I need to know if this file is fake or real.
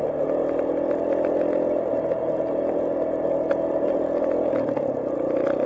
real